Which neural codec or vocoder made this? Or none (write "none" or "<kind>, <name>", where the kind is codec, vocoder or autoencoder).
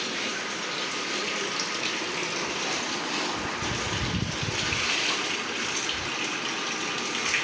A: none